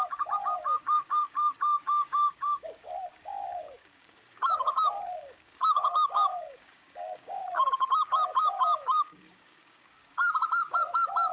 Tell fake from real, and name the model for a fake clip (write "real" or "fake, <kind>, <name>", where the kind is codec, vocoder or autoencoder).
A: fake, codec, DAC